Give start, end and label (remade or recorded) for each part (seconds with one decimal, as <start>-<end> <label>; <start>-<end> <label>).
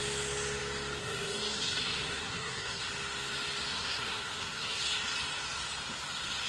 0.0-1.0 recorded; 1.0-2.9 remade; 2.9-3.7 recorded; 3.7-4.8 remade; 4.8-6.5 recorded